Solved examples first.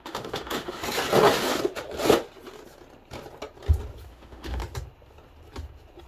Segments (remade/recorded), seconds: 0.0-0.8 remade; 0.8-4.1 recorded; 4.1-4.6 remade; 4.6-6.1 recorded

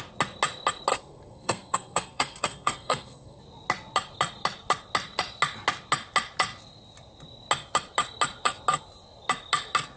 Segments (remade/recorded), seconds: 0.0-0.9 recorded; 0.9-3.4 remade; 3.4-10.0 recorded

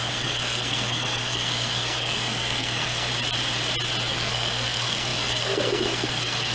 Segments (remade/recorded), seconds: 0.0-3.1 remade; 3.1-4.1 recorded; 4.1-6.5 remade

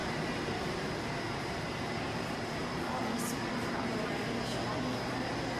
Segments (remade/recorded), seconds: 0.0-2.8 remade; 2.8-5.6 recorded

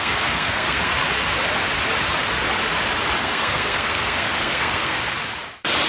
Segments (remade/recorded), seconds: 0.0-1.0 remade; 1.0-3.2 recorded; 3.2-5.0 remade; 5.0-5.9 recorded